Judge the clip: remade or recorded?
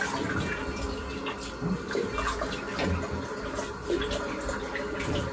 recorded